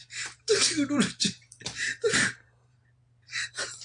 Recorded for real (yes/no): no